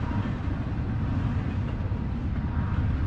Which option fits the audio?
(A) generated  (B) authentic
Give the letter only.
B